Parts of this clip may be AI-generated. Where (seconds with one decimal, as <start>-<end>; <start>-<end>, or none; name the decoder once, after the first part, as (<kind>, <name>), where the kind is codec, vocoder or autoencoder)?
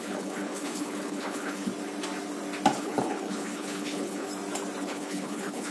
0.0-1.7 (codec, HILCodec); 2.8-4.3; 4.8-5.7